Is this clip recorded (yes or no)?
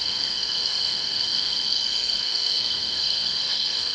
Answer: no